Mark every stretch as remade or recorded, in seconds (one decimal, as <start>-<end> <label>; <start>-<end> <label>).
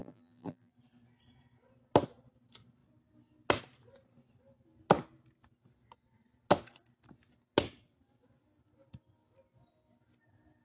0.0-0.7 remade; 0.7-10.6 recorded